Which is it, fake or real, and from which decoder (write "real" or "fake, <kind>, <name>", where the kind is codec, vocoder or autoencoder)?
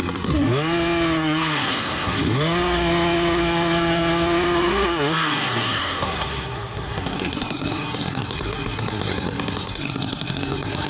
fake, codec, SNAC